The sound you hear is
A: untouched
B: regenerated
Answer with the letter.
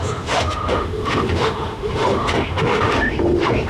B